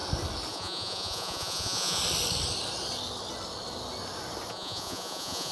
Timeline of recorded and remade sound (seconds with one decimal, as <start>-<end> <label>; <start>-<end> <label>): 0.0-0.5 recorded; 0.5-2.0 remade; 2.0-4.5 recorded; 4.5-5.5 remade